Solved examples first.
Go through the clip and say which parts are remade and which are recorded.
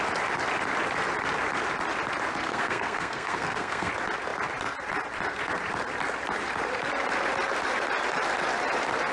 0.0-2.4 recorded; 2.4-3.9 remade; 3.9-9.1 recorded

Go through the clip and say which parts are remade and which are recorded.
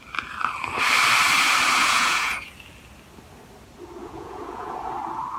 0.0-1.8 recorded; 1.8-2.5 remade; 2.5-4.0 recorded; 4.0-4.9 remade; 4.9-5.4 recorded